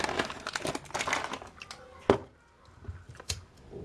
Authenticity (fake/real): real